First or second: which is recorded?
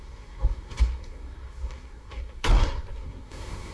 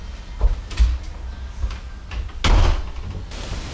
second